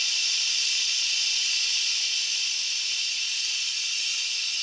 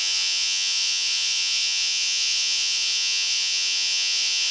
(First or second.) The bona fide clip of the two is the first